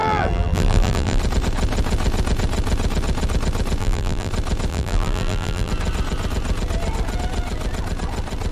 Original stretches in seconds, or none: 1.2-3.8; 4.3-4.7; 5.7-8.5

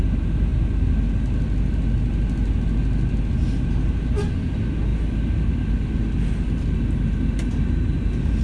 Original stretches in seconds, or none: 0.0-8.4